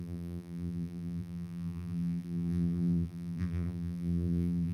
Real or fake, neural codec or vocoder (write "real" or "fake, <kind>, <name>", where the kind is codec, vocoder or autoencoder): fake, vocoder, BigVGAN v2